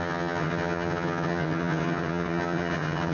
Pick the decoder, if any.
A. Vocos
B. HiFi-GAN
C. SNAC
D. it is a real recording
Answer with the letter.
B